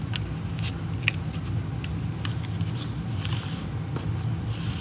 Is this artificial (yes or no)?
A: no